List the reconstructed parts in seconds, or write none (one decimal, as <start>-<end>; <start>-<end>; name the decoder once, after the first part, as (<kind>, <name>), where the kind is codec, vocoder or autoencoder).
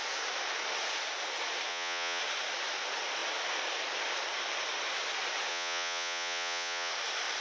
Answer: 1.7-2.2 (vocoder, Vocos); 5.5-6.9